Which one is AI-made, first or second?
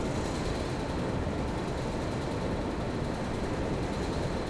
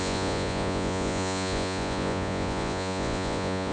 second